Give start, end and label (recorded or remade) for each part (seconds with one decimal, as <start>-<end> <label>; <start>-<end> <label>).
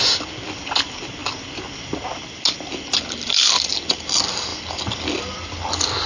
0.0-6.1 recorded